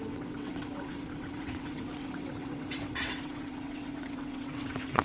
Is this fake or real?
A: fake